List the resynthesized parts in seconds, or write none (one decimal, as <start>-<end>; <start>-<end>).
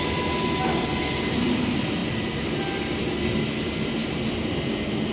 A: none